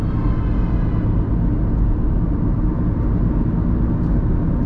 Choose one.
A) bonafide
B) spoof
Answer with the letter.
A